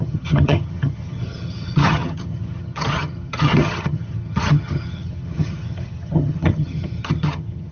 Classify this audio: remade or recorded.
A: remade